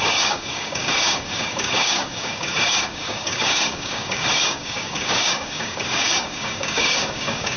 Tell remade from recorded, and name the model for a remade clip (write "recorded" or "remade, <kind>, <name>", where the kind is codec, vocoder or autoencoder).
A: remade, codec, DAC